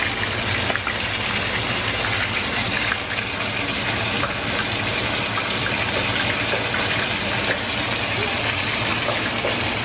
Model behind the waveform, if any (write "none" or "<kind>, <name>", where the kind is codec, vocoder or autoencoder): none